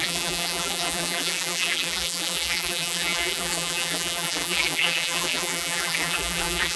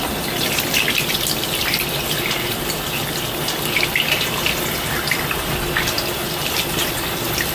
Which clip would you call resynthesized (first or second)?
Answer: first